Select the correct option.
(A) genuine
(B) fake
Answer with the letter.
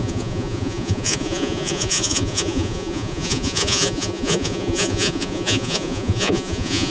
B